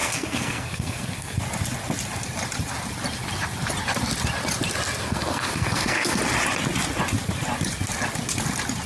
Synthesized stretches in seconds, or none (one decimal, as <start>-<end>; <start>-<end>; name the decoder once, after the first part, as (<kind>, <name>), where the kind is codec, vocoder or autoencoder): 0.0-1.4 (codec, SNAC); 5.0-6.2